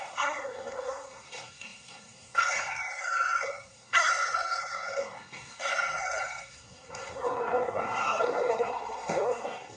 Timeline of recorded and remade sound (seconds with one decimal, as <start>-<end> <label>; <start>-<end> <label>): 0.0-9.8 remade